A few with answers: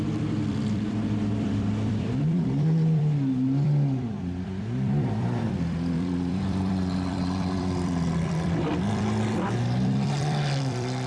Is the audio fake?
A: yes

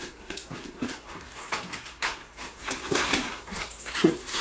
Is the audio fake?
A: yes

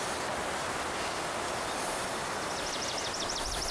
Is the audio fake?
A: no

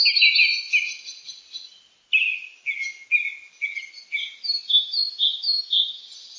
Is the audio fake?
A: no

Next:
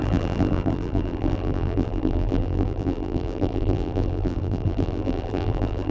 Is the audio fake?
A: yes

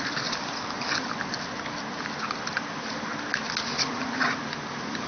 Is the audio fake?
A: no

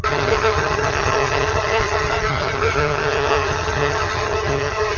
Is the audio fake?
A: yes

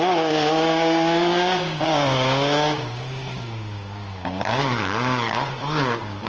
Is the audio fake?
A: yes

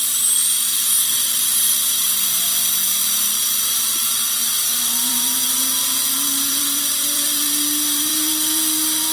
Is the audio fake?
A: yes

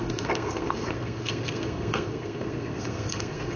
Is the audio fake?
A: yes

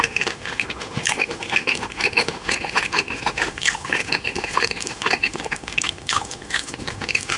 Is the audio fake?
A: yes